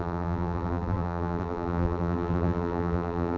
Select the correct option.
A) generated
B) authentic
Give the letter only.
A